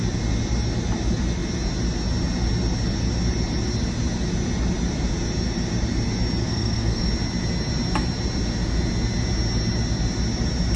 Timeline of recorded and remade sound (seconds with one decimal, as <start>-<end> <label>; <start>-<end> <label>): 0.0-6.4 recorded; 6.4-7.1 remade; 7.1-10.8 recorded